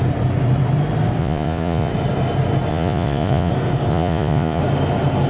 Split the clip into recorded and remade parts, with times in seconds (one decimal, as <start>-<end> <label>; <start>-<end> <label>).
0.0-1.2 recorded; 1.2-1.9 remade; 1.9-2.7 recorded; 2.7-3.5 remade; 3.5-3.9 recorded; 3.9-4.6 remade; 4.6-5.3 recorded